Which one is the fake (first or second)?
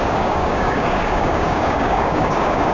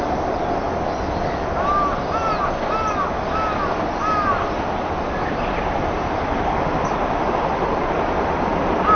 first